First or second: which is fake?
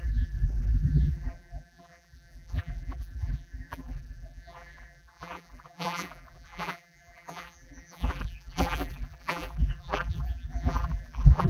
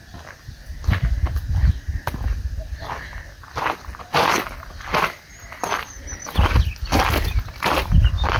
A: first